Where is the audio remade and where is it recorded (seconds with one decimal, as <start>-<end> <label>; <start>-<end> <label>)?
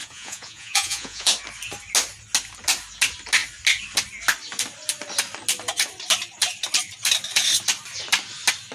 0.0-1.3 remade; 1.3-8.7 recorded